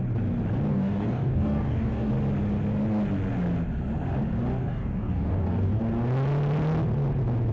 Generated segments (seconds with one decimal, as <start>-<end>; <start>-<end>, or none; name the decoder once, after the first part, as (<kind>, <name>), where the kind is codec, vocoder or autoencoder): 0.7-2.1 (codec, DAC); 4.6-5.8

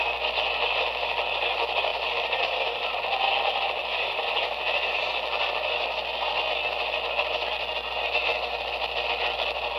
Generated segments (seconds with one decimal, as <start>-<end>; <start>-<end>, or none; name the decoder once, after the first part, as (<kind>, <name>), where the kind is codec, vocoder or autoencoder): 1.9-3.0 (vocoder, BigVGAN v2); 3.8-5.0

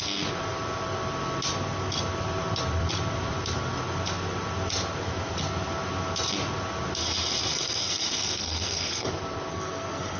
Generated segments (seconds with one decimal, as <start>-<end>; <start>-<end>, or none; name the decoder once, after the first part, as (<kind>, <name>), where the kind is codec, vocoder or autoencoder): 7.5-9.1 (codec, SNAC); 9.5-10.2

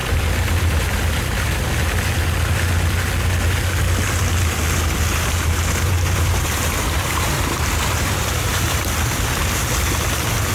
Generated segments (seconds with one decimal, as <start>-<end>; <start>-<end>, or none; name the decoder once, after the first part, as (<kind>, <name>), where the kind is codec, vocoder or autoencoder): 5.1-8.8 (vocoder, BigVGAN v2)

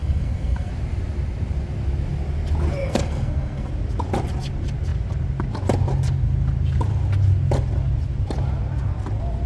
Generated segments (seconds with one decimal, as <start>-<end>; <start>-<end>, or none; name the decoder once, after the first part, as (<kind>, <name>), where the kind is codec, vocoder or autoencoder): 0.0-0.7 (codec, SNAC); 2.8-3.7